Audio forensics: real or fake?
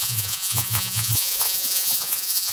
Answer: fake